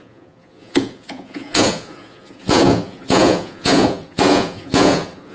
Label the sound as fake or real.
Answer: fake